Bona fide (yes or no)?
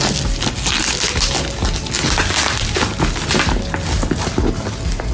yes